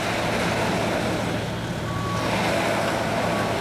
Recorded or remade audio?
recorded